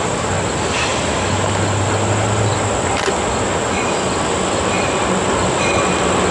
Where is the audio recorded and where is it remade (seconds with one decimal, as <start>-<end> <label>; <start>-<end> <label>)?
0.0-6.3 recorded